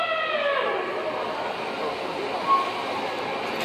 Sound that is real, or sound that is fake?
real